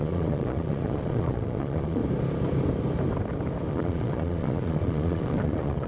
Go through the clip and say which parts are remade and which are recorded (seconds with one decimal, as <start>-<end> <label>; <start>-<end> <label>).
0.0-2.0 remade; 2.0-3.7 recorded; 3.7-5.9 remade